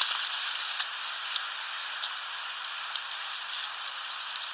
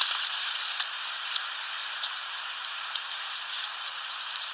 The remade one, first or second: second